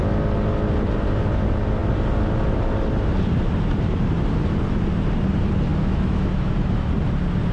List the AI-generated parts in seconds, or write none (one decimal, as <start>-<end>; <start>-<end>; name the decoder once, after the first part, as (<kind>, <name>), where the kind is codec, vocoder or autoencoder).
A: 5.7-6.9 (autoencoder, DAC-VAE)